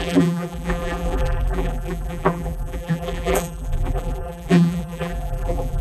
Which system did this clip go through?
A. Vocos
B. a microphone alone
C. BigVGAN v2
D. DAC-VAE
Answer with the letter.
C